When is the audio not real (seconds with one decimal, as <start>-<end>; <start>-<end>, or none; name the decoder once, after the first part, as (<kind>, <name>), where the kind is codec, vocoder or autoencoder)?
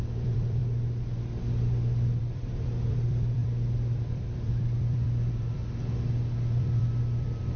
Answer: 0.0-0.6 (vocoder, BigVGAN v2); 2.2-5.6; 6.6-7.6